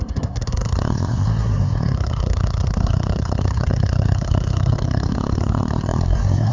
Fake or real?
fake